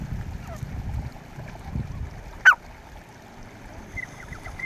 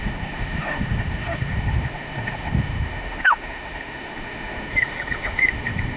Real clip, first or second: first